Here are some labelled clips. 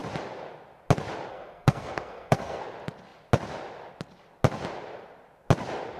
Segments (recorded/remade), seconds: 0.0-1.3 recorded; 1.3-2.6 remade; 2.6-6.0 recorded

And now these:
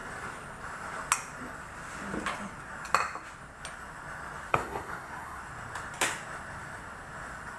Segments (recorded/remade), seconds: 0.0-4.5 recorded; 4.5-5.4 remade; 5.4-7.6 recorded

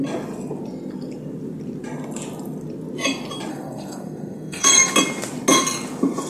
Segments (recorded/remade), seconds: 0.0-3.5 recorded; 3.5-4.9 remade; 4.9-6.3 recorded

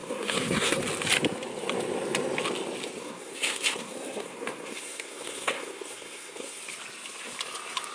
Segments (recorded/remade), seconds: 0.0-0.8 remade; 0.8-3.0 recorded; 3.0-6.6 remade; 6.6-7.9 recorded

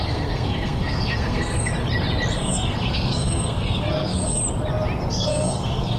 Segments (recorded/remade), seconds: 0.0-1.7 remade; 1.7-2.3 recorded; 2.3-4.4 remade; 4.4-5.1 recorded; 5.1-6.0 remade

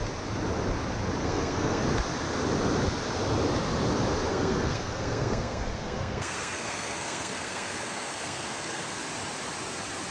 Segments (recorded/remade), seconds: 0.0-1.2 recorded; 1.2-1.8 remade; 1.8-4.3 recorded; 4.3-9.0 remade; 9.0-10.1 recorded

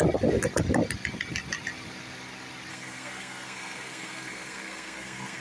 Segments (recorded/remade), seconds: 0.0-2.7 recorded; 2.7-5.4 remade